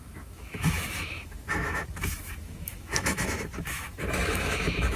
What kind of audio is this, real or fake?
fake